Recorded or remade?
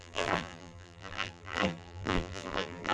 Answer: remade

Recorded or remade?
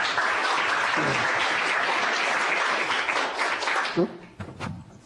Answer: recorded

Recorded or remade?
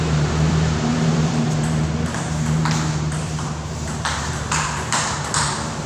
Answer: remade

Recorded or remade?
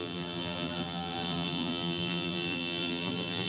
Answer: remade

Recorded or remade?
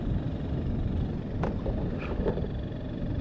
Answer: remade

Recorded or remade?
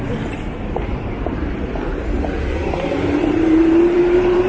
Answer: remade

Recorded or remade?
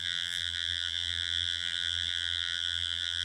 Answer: remade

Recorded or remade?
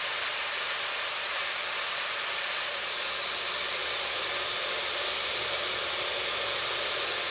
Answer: remade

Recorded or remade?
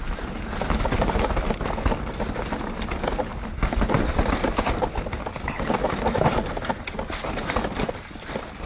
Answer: remade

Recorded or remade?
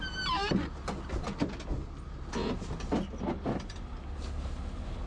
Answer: recorded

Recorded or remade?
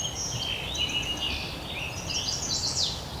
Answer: recorded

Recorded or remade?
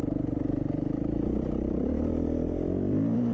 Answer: remade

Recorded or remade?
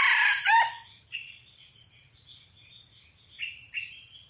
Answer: remade